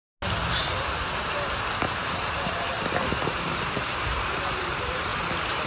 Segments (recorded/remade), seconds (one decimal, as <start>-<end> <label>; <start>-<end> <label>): 0.0-0.6 recorded; 0.6-5.7 remade